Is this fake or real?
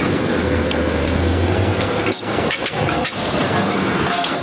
fake